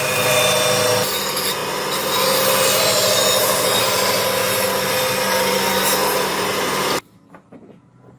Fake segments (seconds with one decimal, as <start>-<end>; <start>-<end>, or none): none